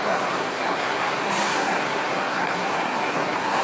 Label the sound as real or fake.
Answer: fake